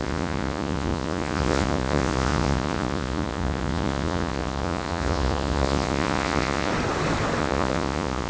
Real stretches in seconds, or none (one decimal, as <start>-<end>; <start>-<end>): 6.7-7.4